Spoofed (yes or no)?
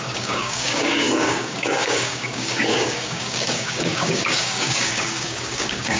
yes